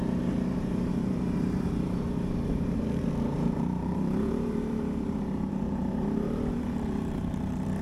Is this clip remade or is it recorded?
remade